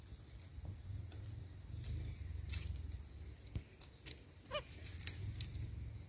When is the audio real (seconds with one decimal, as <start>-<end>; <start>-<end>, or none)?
0.0-6.1